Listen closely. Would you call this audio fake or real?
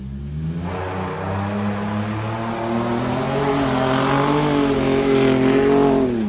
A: real